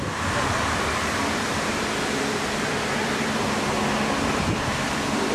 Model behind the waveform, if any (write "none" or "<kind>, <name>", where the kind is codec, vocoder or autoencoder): vocoder, BigVGAN v2